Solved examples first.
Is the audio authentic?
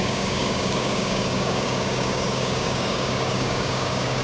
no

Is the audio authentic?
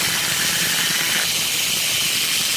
yes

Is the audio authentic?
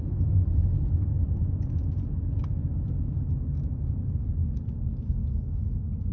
yes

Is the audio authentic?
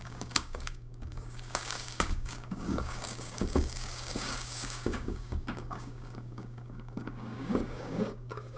no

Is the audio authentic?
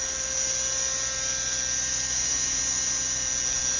yes